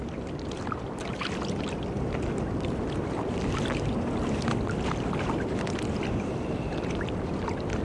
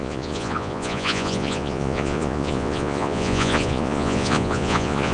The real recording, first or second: first